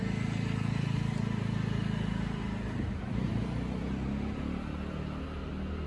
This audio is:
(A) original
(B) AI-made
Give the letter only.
A